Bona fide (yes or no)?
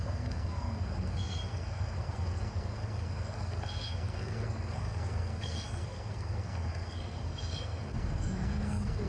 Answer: no